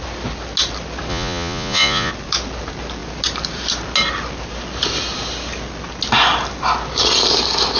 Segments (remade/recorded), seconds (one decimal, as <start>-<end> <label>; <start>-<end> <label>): 0.0-1.1 recorded; 1.1-2.1 remade; 2.1-7.8 recorded